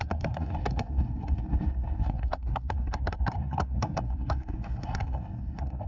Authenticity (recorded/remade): remade